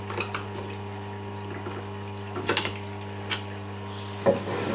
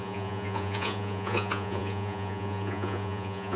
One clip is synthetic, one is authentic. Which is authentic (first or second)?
first